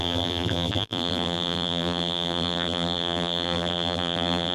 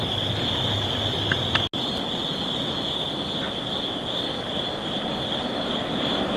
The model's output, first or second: first